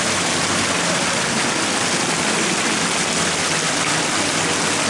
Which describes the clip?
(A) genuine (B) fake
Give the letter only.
A